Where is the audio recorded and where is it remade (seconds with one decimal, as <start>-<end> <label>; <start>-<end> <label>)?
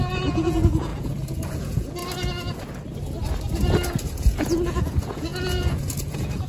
0.0-2.0 remade; 2.0-4.2 recorded; 4.2-6.5 remade